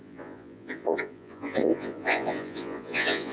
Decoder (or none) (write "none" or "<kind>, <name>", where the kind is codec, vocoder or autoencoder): vocoder, Vocos